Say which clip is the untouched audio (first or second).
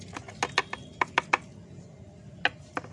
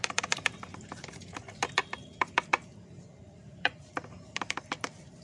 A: first